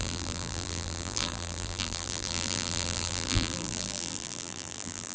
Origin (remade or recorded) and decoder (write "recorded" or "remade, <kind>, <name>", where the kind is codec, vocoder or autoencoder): remade, vocoder, BigVGAN v2